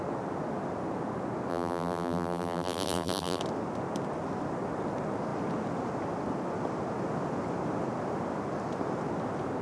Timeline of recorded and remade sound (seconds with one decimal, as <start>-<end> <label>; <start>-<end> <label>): 0.0-1.5 recorded; 1.5-3.4 remade; 3.4-9.6 recorded